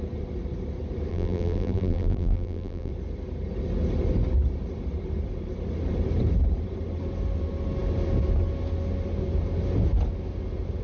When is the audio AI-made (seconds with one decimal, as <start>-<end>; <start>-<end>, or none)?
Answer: 1.1-2.9